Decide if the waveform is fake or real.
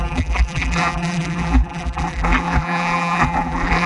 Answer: fake